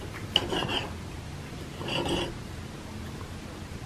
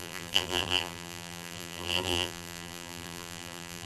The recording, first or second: first